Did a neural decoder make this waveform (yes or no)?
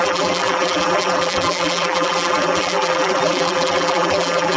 yes